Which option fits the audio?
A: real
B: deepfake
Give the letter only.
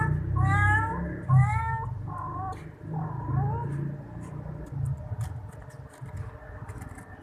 A